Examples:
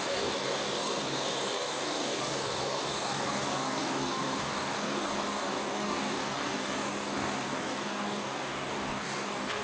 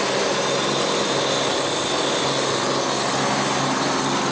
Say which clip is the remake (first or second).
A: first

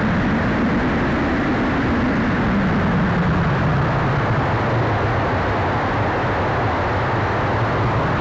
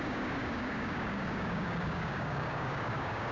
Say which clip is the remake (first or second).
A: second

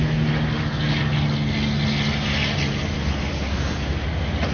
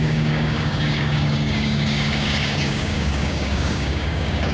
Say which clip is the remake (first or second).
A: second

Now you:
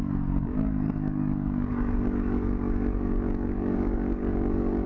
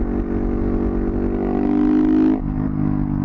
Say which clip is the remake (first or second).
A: first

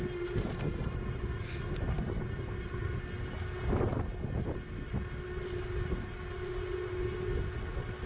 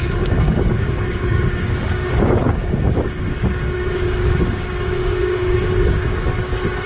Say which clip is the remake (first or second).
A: second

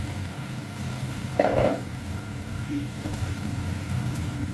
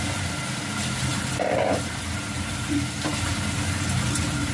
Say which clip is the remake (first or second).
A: first